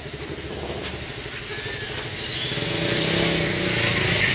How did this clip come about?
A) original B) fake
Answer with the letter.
A